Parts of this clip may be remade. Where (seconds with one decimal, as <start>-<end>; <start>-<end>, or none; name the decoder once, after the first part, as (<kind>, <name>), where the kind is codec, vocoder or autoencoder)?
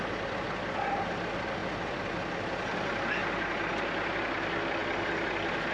1.6-2.1 (vocoder, BigVGAN v2)